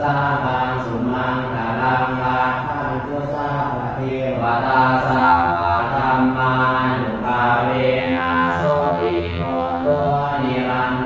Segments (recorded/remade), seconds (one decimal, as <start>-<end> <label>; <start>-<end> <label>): 0.0-5.2 recorded; 5.2-5.8 remade; 5.8-8.0 recorded; 8.0-10.1 remade; 10.1-11.1 recorded